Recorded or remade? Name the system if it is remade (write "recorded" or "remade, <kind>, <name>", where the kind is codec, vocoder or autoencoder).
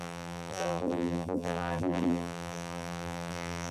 remade, vocoder, BigVGAN v2